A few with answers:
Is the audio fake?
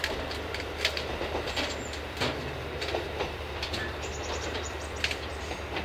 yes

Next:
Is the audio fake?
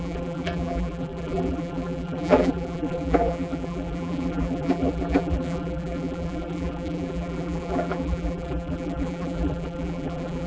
yes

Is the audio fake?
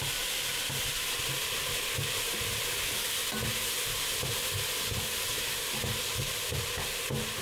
yes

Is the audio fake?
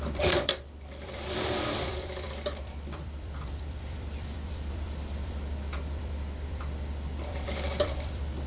yes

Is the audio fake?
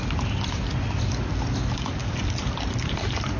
yes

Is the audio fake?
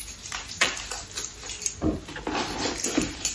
no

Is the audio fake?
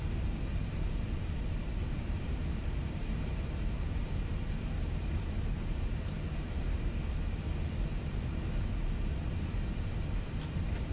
yes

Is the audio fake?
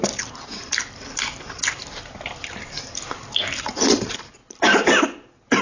yes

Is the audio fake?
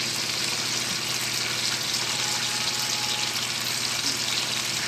no